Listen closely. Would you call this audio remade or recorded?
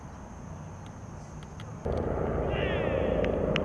recorded